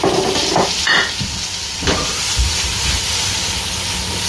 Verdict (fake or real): real